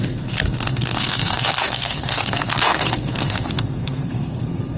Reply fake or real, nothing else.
fake